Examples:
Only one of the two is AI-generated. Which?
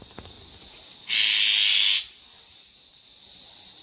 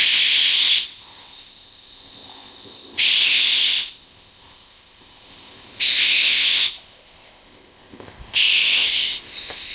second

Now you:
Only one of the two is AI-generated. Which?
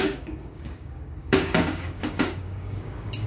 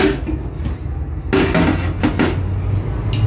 first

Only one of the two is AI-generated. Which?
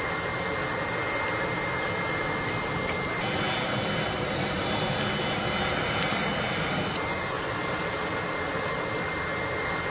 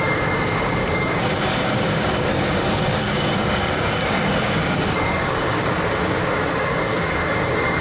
second